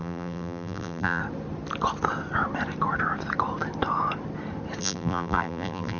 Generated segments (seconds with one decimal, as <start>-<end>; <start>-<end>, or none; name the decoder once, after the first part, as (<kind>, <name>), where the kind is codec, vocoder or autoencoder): 0.0-1.2 (vocoder, BigVGAN v2); 4.8-6.0